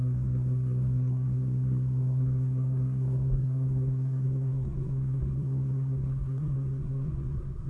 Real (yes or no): no